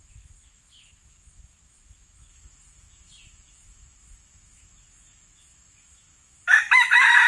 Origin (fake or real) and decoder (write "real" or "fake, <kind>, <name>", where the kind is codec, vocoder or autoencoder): fake, autoencoder, DAC-VAE